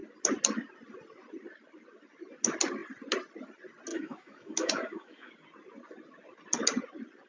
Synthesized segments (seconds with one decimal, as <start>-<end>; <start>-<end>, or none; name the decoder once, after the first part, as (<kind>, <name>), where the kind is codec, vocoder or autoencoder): 3.9-5.3 (autoencoder, DAC-VAE)